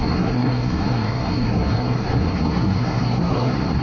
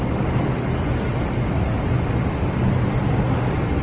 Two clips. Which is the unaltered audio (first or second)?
second